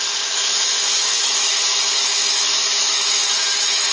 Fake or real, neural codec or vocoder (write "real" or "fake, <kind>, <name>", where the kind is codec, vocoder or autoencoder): fake, autoencoder, DAC-VAE